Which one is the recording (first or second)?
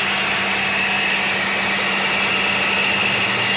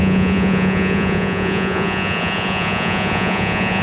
first